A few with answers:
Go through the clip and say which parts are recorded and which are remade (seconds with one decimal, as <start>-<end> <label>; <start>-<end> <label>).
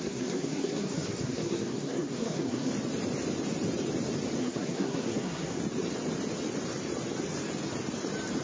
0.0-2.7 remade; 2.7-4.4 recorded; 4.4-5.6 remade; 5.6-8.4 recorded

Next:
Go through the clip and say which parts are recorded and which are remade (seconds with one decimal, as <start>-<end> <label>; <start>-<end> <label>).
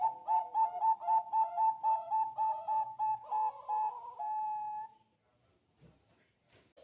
0.0-6.8 recorded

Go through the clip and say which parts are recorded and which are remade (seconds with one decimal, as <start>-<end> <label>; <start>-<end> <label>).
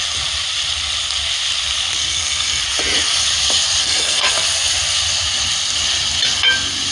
0.0-2.0 recorded; 2.0-2.6 remade; 2.6-3.8 recorded; 3.8-4.3 remade; 4.3-6.9 recorded